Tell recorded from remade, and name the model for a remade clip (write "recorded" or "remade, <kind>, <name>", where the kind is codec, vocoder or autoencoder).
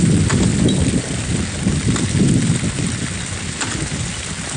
recorded